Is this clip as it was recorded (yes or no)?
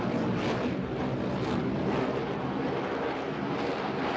yes